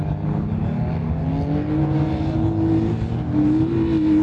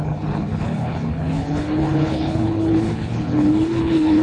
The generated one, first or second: second